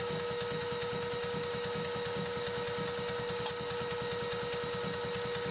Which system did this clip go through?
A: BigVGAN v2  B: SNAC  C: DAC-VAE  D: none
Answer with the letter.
D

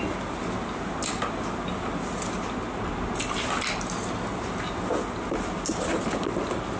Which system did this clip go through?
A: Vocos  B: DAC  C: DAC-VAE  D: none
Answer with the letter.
D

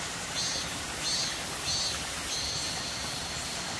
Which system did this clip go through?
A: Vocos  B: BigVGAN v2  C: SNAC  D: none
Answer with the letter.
D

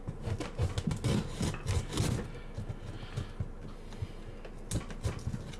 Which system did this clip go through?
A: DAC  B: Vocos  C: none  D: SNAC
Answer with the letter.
C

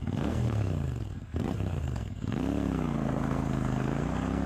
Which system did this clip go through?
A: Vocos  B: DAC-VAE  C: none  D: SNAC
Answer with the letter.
D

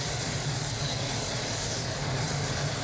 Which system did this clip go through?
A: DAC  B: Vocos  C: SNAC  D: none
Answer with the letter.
A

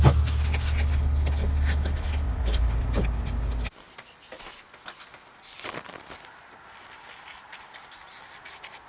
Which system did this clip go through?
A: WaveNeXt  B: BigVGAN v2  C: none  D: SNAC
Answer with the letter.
C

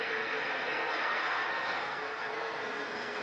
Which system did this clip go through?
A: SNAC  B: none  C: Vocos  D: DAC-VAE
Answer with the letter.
A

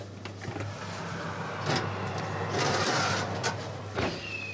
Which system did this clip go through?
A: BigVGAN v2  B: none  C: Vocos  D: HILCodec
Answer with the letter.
B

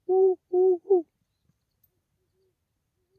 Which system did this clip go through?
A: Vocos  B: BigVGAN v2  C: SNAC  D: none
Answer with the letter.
D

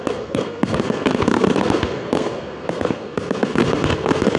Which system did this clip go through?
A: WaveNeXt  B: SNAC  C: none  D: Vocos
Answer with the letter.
B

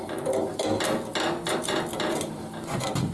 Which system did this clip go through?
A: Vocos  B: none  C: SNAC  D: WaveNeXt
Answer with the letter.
B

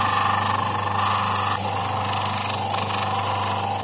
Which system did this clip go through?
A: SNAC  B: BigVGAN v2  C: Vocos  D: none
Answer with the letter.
D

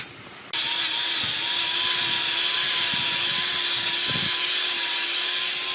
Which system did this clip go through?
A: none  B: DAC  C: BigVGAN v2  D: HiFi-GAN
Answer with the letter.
A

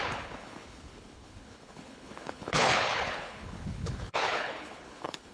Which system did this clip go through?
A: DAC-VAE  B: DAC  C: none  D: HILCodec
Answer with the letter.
D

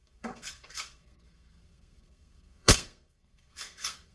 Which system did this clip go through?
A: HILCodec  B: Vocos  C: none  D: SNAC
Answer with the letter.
D